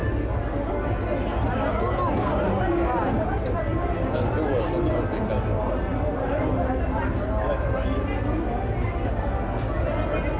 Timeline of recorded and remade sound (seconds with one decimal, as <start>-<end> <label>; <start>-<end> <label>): 0.0-10.4 recorded